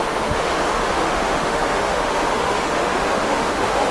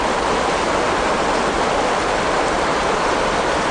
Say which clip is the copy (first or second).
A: first